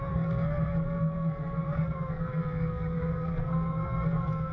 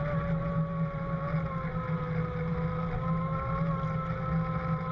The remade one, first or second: first